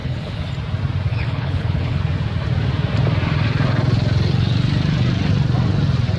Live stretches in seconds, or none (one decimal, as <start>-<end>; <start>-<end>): 0.5-1.1; 2.0-6.2